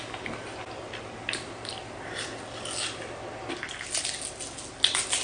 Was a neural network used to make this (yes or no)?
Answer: no